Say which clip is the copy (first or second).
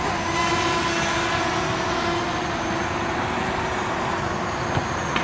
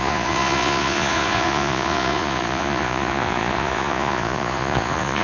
second